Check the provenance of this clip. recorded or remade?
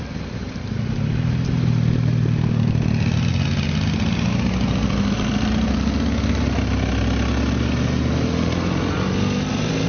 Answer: recorded